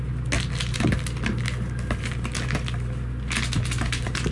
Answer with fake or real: real